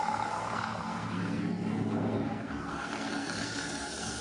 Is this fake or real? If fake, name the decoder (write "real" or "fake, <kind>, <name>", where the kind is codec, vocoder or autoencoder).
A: fake, codec, SNAC